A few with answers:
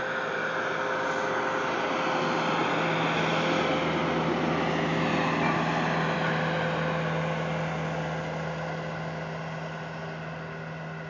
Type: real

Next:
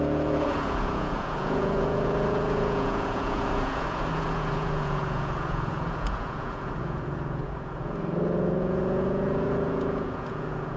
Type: fake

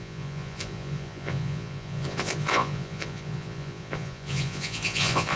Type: fake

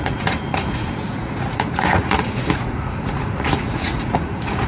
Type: fake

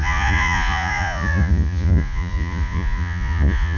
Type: fake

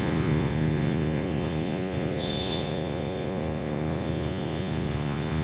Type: fake